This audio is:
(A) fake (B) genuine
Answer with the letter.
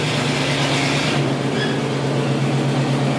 B